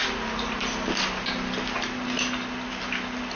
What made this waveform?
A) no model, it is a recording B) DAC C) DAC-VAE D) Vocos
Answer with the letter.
A